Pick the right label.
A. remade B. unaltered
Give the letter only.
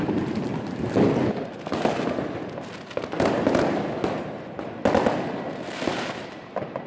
B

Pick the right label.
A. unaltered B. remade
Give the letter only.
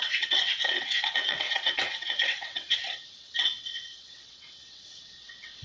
B